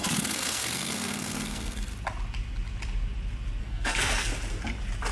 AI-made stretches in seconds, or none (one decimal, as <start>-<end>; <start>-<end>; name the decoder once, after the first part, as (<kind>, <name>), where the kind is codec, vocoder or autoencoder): 0.0-1.9 (codec, SNAC); 3.6-4.3